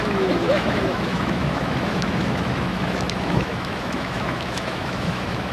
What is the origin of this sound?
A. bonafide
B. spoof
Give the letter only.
B